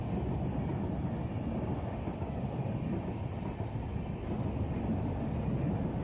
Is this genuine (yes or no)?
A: yes